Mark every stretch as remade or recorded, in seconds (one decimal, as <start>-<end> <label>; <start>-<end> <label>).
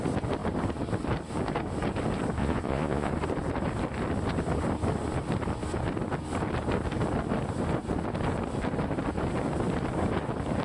0.0-2.4 recorded; 2.4-3.1 remade; 3.1-10.6 recorded